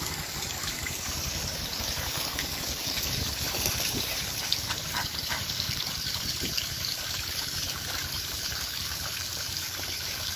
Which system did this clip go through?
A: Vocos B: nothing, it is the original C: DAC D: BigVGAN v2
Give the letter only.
C